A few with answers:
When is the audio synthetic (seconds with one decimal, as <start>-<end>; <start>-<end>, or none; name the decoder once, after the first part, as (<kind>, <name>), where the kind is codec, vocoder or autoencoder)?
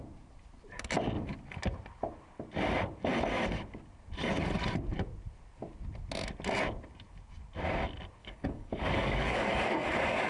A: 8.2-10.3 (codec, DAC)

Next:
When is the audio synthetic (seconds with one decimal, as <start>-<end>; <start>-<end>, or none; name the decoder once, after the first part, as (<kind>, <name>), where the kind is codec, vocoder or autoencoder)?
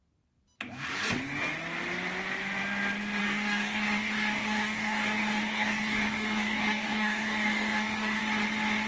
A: 3.2-8.2 (codec, DAC)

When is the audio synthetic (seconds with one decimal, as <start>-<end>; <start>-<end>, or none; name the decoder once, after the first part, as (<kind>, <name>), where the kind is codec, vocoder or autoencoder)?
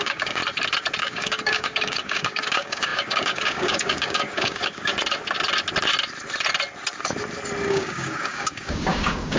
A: 0.0-0.4 (codec, DAC); 1.0-4.9; 7.7-9.4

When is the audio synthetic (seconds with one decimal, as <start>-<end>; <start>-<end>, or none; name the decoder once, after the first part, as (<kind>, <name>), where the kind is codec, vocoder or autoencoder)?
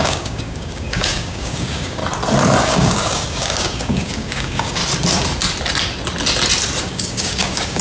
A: 0.0-2.0 (codec, DAC); 2.6-4.8; 6.8-7.8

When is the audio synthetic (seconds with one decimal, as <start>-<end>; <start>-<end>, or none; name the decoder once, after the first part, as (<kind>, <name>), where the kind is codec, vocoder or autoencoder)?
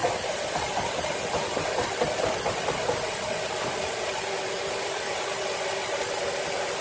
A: none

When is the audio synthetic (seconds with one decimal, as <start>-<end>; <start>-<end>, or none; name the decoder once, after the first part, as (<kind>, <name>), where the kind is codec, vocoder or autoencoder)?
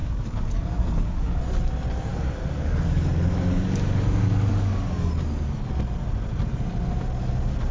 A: 0.0-1.4 (codec, DAC); 2.1-5.1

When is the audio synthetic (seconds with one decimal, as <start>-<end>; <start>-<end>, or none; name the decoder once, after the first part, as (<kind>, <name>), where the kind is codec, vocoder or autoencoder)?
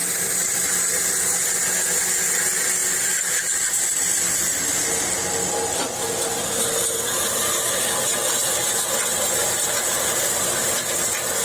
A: none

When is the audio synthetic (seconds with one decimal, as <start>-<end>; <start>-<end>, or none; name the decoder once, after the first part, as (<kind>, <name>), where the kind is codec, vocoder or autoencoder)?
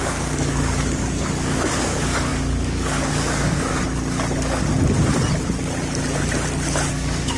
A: 0.0-3.7 (codec, DAC); 6.9-7.4